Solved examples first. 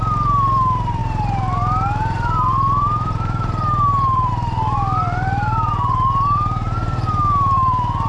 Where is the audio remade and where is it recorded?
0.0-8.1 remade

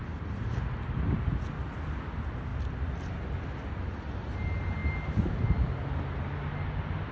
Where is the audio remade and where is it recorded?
0.0-7.1 recorded

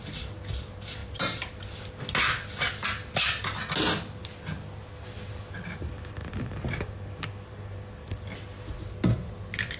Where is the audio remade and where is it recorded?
0.0-1.0 recorded; 1.0-1.6 remade; 1.6-9.8 recorded

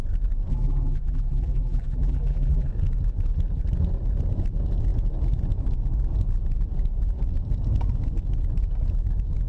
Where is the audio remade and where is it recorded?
0.0-0.5 recorded; 0.5-2.7 remade; 2.7-9.5 recorded

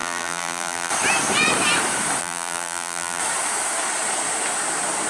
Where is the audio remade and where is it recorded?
0.0-0.9 remade; 0.9-2.2 recorded; 2.2-3.2 remade; 3.2-5.1 recorded